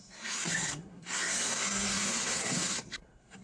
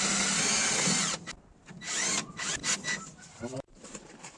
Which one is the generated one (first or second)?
first